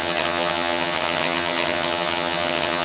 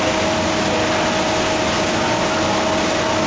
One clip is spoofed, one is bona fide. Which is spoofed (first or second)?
first